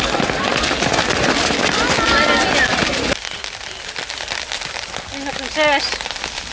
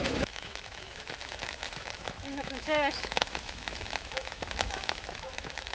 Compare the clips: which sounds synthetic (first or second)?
second